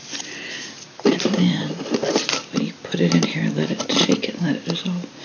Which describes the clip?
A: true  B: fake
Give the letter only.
A